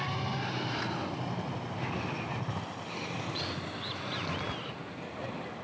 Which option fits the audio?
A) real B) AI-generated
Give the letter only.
A